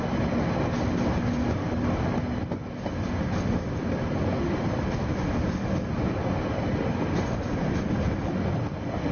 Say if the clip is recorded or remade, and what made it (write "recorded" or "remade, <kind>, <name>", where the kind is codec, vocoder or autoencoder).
recorded